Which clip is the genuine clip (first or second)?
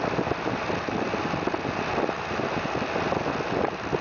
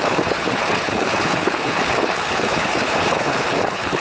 first